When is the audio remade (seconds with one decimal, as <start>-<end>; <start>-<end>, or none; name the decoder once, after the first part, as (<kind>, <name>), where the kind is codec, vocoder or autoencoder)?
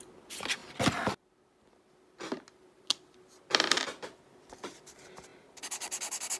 none